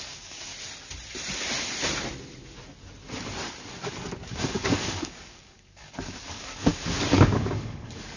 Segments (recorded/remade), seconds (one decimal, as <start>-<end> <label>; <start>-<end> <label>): 0.0-0.5 remade; 0.5-4.3 recorded; 4.3-8.2 remade

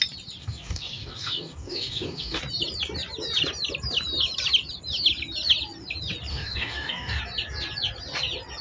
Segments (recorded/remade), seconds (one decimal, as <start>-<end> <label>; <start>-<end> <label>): 0.0-0.4 recorded; 0.4-2.4 remade; 2.4-6.3 recorded; 6.3-7.2 remade; 7.2-8.6 recorded

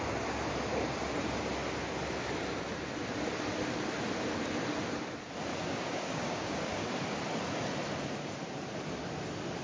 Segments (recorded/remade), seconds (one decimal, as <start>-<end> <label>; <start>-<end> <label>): 0.0-5.5 recorded; 5.5-7.0 remade; 7.0-9.6 recorded

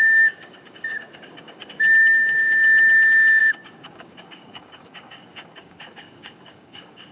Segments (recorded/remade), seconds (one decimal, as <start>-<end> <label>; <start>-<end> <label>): 0.0-1.6 remade; 1.6-2.1 recorded; 2.1-2.6 remade; 2.6-3.4 recorded; 3.4-7.1 remade

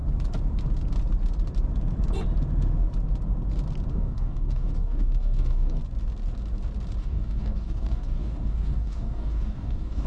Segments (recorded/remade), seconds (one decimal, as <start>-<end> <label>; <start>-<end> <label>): 0.0-3.9 recorded; 3.9-5.8 remade; 5.8-7.0 recorded; 7.0-10.1 remade

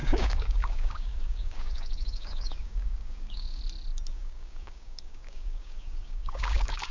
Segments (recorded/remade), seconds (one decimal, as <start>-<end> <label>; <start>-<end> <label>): 0.0-3.6 remade; 3.6-4.1 recorded; 4.1-6.9 remade

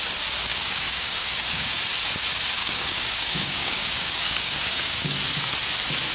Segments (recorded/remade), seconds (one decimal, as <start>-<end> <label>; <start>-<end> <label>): 0.0-0.5 recorded; 0.5-1.8 remade; 1.8-2.6 recorded; 2.6-5.1 remade; 5.1-6.1 recorded